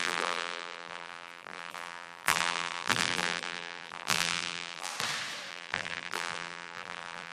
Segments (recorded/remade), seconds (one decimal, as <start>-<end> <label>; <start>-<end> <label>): 0.0-4.9 remade; 4.9-5.5 recorded; 5.5-7.3 remade